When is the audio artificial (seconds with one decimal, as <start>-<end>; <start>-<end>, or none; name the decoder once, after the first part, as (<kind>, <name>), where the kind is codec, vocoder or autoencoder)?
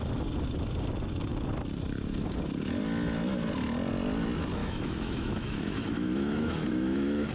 4.6-7.3 (autoencoder, DAC-VAE)